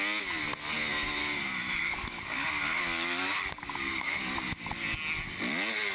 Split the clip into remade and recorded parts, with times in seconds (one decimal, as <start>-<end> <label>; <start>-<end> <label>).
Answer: 0.0-1.2 recorded; 1.2-4.7 remade; 4.7-5.9 recorded